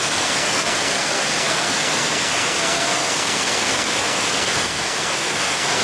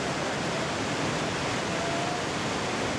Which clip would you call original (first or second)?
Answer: second